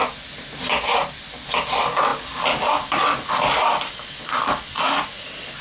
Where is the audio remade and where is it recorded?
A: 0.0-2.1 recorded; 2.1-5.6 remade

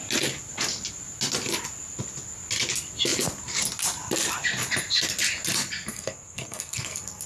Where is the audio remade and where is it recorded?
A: 0.0-5.9 recorded; 5.9-7.3 remade

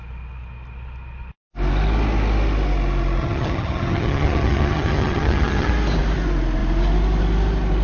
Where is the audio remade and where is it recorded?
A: 0.0-3.2 recorded; 3.2-5.7 remade; 5.7-7.8 recorded

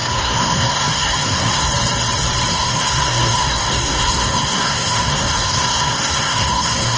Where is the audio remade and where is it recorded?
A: 0.0-1.7 remade; 1.7-2.5 recorded; 2.5-7.0 remade